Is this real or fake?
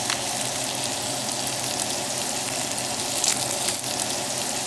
real